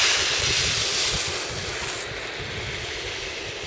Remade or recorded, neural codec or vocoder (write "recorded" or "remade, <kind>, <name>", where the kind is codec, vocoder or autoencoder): recorded